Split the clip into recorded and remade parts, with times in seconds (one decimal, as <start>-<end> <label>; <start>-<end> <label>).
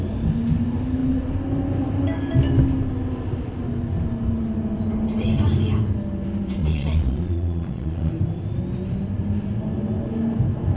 0.0-6.6 recorded; 6.6-8.1 remade; 8.1-10.8 recorded